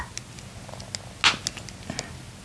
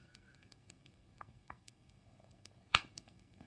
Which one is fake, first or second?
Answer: second